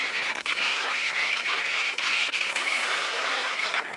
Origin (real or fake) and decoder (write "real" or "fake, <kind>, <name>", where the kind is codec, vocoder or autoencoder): fake, codec, SNAC